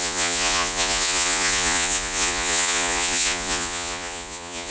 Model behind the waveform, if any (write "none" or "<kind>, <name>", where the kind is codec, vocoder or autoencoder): vocoder, Vocos